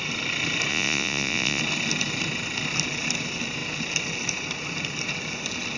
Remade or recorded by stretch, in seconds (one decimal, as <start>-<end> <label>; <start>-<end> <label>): 0.0-0.7 recorded; 0.7-1.6 remade; 1.6-5.8 recorded